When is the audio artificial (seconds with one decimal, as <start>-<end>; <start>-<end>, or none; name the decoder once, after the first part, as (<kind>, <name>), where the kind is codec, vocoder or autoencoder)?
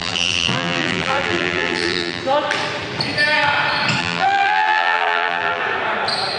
0.0-2.2 (vocoder, BigVGAN v2); 4.0-5.6